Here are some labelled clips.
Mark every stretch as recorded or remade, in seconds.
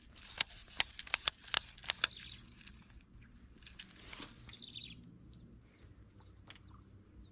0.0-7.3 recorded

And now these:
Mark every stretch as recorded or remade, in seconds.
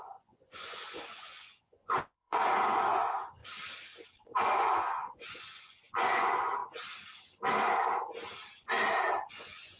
0.0-3.4 remade; 3.4-4.4 recorded; 4.4-6.6 remade; 6.6-9.3 recorded; 9.3-9.8 remade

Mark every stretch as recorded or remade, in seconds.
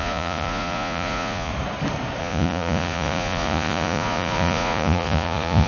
0.0-1.5 remade; 1.5-2.2 recorded; 2.2-5.7 remade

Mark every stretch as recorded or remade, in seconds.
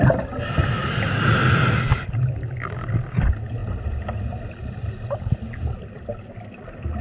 0.0-7.0 recorded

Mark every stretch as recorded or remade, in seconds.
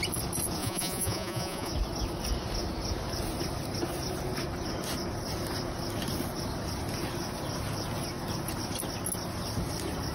0.0-0.6 recorded; 0.6-1.7 remade; 1.7-10.1 recorded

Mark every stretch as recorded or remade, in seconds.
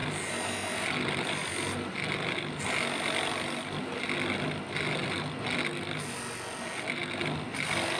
0.0-8.0 recorded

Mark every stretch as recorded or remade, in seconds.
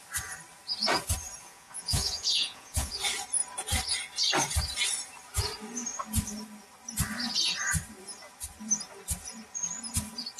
0.0-1.4 recorded; 1.4-3.0 remade; 3.0-10.4 recorded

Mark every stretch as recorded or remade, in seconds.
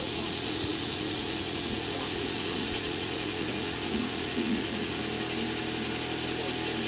0.0-5.0 remade; 5.0-6.9 recorded